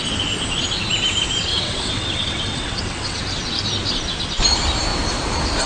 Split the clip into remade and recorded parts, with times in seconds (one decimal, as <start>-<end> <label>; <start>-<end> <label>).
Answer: 0.0-1.5 recorded; 1.5-3.2 remade; 3.2-5.7 recorded